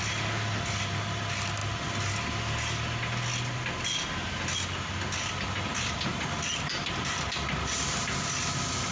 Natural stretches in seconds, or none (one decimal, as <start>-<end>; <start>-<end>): 0.0-6.1; 7.8-8.9